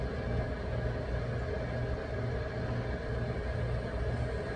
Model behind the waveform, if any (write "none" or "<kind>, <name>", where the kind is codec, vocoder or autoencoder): none